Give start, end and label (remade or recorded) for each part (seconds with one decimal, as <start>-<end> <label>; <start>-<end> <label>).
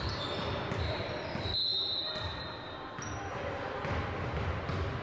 0.0-5.0 recorded